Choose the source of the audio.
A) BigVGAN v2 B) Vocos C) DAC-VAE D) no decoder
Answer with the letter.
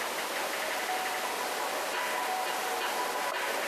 D